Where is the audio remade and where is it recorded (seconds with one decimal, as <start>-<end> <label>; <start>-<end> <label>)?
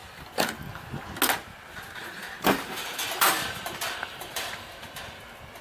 0.0-2.0 recorded; 2.0-4.7 remade; 4.7-5.6 recorded